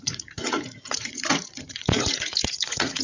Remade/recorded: remade